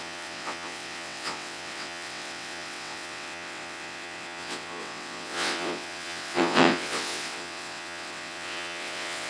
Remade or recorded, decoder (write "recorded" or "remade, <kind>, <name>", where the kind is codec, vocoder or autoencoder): remade, vocoder, WaveNeXt